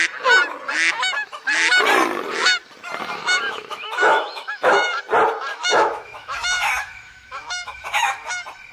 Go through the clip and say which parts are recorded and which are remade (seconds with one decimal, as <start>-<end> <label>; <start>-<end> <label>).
0.0-3.2 recorded; 3.2-5.0 remade; 5.0-5.5 recorded; 5.5-8.1 remade; 8.1-8.7 recorded